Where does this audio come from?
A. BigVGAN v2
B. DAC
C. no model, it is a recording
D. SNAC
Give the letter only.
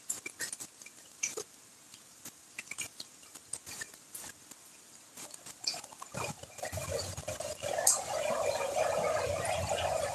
C